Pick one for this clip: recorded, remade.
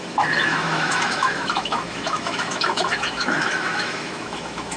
remade